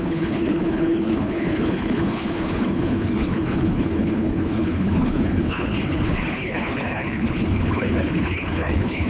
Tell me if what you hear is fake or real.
fake